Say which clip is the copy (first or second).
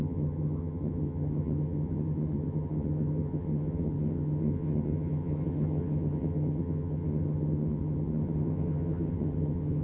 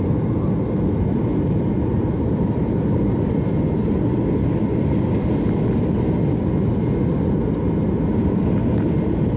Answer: first